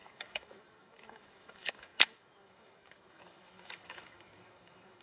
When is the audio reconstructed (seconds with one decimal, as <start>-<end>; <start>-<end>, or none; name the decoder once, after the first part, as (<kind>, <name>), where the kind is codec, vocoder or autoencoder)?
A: 0.0-5.0 (autoencoder, DAC-VAE)